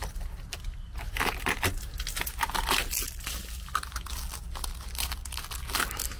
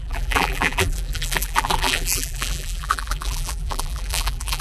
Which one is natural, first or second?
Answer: first